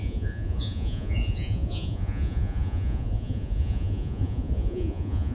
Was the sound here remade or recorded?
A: remade